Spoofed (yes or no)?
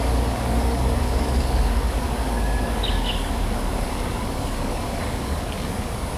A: yes